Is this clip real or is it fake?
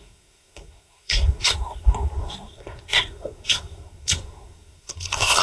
fake